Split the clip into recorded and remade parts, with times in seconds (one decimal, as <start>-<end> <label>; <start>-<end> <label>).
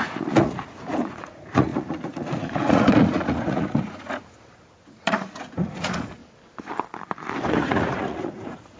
0.0-6.2 remade; 6.2-7.5 recorded; 7.5-8.8 remade